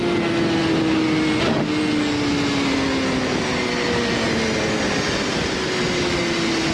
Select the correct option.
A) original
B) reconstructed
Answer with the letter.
A